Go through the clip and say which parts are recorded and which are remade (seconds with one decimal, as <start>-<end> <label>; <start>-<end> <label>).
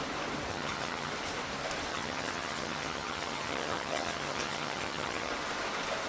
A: 0.0-0.5 recorded; 0.5-1.1 remade; 1.1-1.9 recorded; 1.9-5.3 remade; 5.3-6.1 recorded